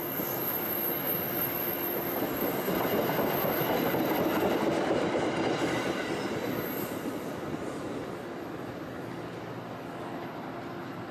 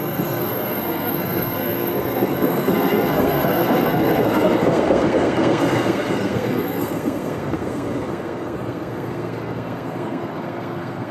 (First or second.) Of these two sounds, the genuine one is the first